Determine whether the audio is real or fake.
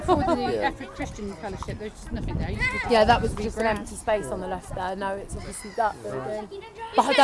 real